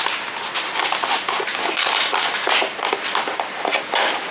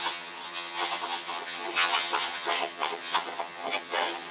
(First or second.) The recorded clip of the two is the first